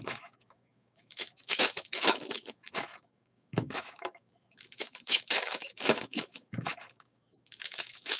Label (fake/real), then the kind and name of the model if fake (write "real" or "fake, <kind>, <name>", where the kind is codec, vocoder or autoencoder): fake, autoencoder, DAC-VAE